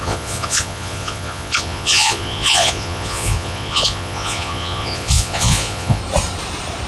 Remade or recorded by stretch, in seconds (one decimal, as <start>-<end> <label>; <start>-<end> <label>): 0.0-6.0 remade; 6.0-6.9 recorded